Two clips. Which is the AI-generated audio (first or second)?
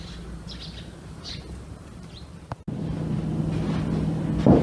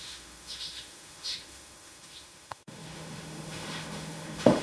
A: second